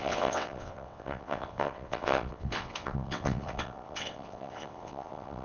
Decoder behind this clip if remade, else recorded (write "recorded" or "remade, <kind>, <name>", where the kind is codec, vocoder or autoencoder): remade, vocoder, WaveNeXt